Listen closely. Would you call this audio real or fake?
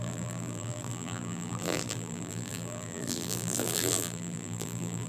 fake